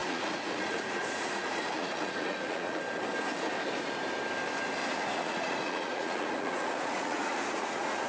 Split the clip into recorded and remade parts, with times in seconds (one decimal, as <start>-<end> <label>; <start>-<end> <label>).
0.0-2.8 remade; 2.8-4.8 recorded; 4.8-8.1 remade